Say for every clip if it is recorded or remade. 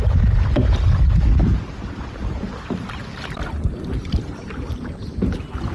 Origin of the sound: recorded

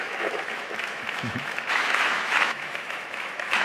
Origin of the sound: remade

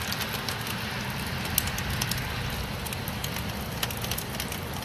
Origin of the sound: recorded